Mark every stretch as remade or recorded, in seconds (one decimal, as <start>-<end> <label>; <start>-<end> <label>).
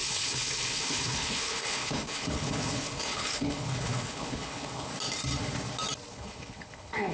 0.0-4.9 remade; 4.9-6.1 recorded; 6.1-7.1 remade